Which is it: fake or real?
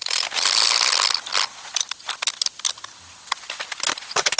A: real